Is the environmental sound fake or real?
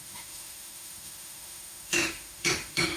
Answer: fake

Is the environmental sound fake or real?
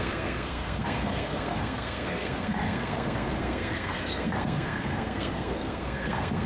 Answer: fake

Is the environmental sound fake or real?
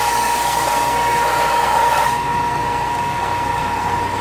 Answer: fake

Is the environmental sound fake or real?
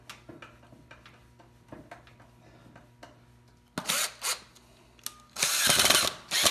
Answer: real